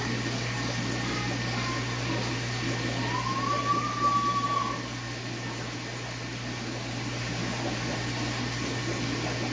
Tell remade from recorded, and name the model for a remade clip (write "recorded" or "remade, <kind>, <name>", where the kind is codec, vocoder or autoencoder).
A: recorded